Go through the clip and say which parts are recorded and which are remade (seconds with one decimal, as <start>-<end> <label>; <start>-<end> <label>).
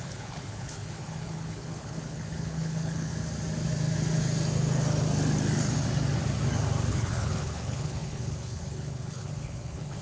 0.0-3.1 remade; 3.1-6.9 recorded; 6.9-10.0 remade